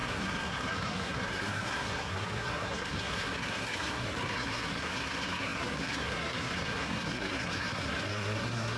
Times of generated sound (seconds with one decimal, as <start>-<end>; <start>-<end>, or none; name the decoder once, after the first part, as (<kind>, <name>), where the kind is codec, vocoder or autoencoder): 0.0-8.8 (codec, SNAC)